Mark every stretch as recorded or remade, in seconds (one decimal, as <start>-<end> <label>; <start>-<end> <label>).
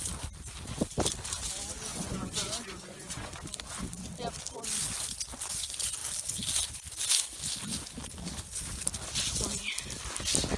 0.0-1.9 recorded; 1.9-3.3 remade; 3.3-10.6 recorded